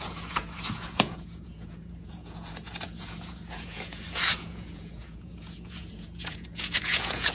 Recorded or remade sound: remade